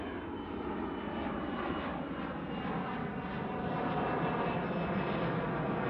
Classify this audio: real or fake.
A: real